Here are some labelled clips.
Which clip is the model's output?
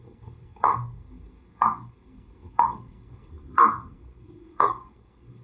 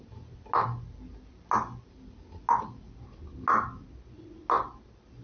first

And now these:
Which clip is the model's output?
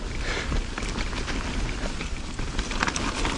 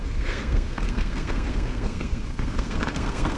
second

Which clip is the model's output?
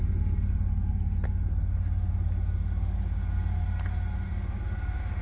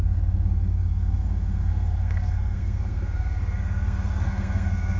second